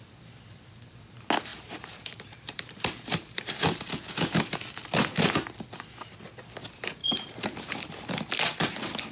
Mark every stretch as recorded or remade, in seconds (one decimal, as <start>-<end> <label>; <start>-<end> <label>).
0.0-1.5 recorded; 1.5-3.6 remade; 3.6-7.0 recorded; 7.0-7.9 remade; 7.9-9.1 recorded